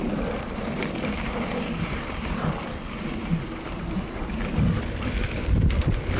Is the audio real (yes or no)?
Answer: yes